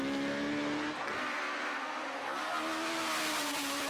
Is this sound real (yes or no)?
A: yes